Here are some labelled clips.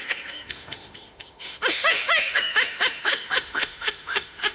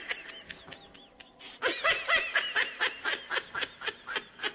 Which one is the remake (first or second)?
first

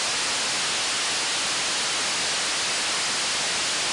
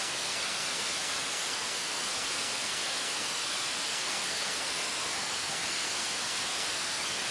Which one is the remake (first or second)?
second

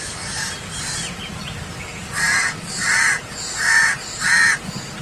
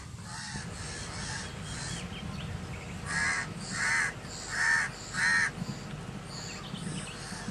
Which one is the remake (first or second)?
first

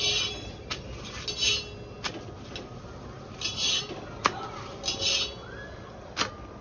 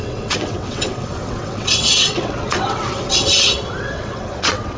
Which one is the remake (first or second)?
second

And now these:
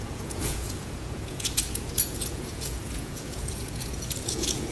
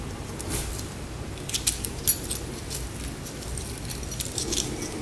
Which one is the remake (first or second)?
first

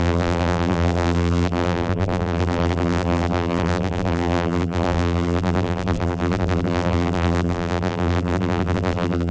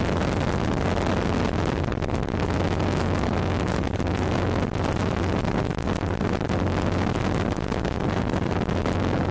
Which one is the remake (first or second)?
first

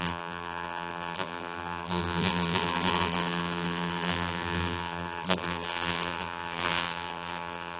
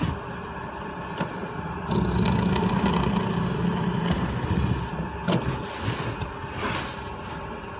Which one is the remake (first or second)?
first